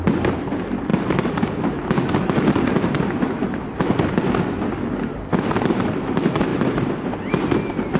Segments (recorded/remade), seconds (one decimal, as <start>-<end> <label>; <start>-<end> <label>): 0.0-8.0 recorded